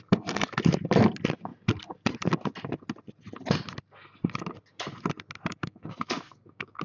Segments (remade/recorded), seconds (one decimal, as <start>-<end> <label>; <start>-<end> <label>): 0.0-5.6 recorded; 5.6-6.8 remade

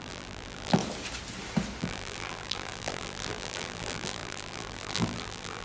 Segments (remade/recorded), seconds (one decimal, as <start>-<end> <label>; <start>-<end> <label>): 0.0-0.8 remade; 0.8-1.8 recorded; 1.8-5.6 remade

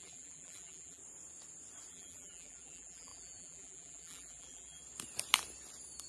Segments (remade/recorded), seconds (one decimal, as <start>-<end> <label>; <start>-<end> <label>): 0.0-1.0 remade; 1.0-1.9 recorded; 1.9-4.8 remade; 4.8-6.1 recorded

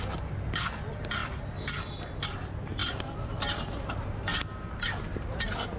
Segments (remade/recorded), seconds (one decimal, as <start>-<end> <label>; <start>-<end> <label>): 0.0-5.8 recorded

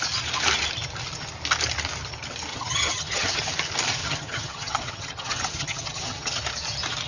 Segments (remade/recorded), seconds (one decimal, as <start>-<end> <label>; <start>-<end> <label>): 0.0-2.5 recorded; 2.5-3.4 remade; 3.4-4.0 recorded; 4.0-6.3 remade; 6.3-7.1 recorded

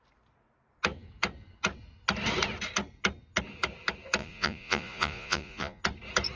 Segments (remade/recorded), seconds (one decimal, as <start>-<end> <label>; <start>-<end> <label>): 0.0-4.2 recorded; 4.2-5.8 remade; 5.8-6.4 recorded

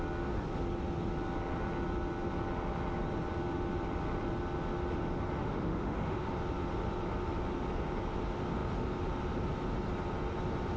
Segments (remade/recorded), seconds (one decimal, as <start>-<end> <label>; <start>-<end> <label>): 0.0-5.4 recorded; 5.4-6.3 remade; 6.3-10.8 recorded